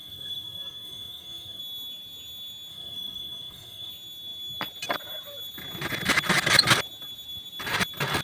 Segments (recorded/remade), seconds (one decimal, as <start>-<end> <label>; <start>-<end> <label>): 0.0-1.6 remade; 1.6-2.7 recorded; 2.7-3.9 remade; 3.9-8.2 recorded

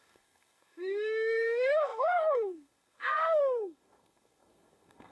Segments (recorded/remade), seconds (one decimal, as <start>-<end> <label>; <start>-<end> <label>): 0.0-5.1 remade